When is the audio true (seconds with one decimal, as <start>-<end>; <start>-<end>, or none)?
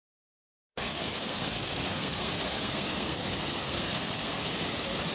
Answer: 4.4-5.1